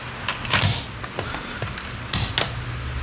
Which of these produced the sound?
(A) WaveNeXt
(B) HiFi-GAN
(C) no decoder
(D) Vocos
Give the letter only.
C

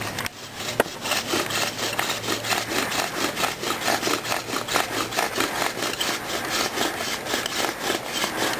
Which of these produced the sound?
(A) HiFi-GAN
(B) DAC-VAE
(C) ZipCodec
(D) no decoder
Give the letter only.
D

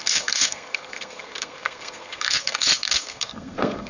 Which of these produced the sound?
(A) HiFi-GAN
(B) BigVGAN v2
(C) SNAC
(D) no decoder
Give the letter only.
C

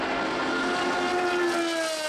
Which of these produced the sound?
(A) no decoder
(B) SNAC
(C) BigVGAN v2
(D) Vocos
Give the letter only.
A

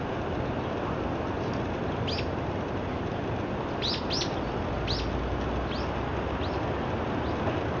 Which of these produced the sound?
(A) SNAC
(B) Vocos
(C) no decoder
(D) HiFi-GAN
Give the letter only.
C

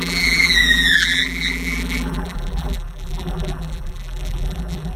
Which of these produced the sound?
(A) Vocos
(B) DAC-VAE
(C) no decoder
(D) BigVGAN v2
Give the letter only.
D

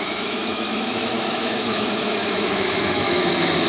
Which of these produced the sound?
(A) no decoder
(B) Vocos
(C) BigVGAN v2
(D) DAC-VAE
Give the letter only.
D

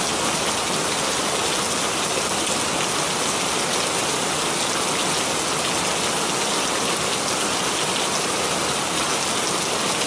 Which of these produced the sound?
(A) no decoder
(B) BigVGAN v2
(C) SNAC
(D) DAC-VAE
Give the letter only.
A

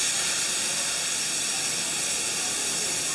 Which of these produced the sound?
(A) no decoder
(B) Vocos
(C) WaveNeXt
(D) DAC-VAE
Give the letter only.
A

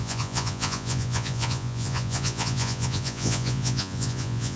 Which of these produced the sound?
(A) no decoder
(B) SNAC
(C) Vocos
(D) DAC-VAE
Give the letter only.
C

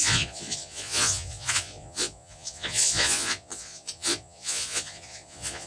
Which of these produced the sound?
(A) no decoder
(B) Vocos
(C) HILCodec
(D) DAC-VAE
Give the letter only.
B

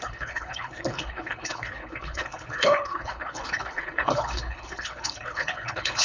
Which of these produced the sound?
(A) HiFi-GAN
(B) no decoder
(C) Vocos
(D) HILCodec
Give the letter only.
D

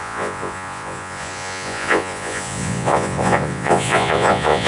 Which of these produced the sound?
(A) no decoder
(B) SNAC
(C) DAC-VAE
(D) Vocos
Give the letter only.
D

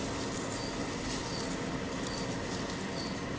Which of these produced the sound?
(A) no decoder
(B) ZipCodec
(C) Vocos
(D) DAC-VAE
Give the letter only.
A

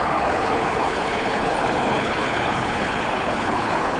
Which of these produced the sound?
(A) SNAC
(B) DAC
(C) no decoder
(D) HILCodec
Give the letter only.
D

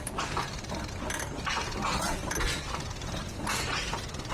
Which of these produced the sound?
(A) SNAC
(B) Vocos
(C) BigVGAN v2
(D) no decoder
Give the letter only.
C